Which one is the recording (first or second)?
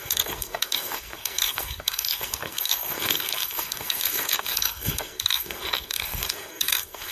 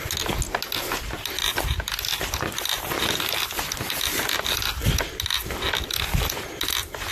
second